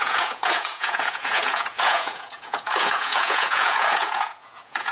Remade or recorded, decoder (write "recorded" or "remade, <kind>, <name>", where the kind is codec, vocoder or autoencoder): remade, vocoder, Vocos